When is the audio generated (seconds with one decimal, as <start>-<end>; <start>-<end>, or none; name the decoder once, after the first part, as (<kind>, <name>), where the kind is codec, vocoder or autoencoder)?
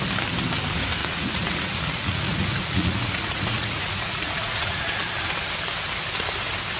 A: 1.0-4.9 (vocoder, Vocos)